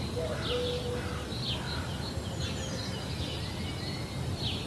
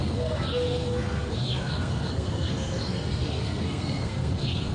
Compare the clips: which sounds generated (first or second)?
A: second